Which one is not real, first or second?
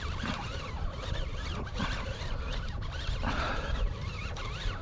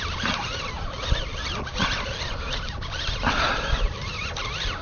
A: first